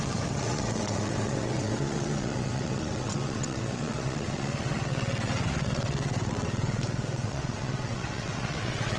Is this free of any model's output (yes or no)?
no